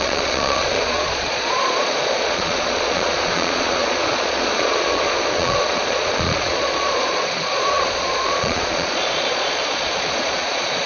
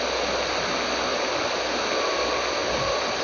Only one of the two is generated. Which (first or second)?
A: first